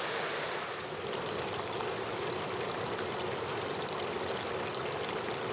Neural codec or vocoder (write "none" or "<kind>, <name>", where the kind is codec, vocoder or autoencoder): none